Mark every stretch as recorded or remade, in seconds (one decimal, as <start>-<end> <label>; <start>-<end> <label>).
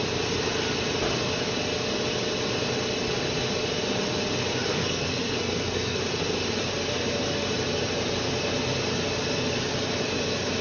0.0-4.7 recorded; 4.7-6.0 remade; 6.0-10.6 recorded